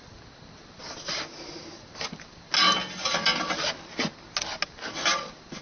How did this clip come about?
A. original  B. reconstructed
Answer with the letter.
A